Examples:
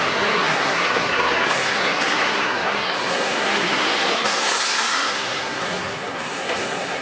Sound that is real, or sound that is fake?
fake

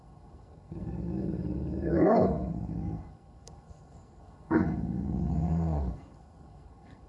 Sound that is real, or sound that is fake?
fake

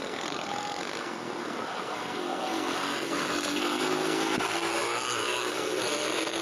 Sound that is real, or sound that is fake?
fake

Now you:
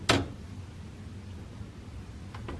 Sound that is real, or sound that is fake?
real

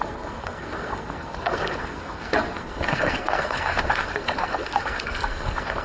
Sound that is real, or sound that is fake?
fake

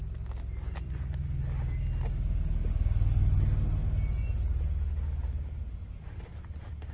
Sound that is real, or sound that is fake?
real